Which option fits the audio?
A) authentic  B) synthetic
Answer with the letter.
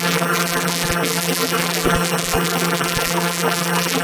B